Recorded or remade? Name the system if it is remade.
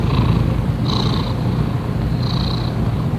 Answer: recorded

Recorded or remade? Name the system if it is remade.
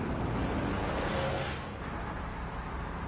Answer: recorded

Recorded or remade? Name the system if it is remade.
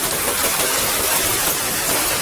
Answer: remade, vocoder, BigVGAN v2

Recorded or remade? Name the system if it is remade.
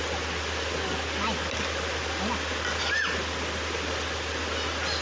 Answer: recorded